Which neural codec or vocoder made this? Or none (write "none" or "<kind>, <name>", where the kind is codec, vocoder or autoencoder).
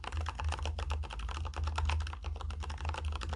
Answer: none